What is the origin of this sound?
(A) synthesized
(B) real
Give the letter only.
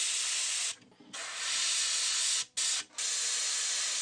B